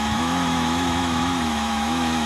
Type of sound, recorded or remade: remade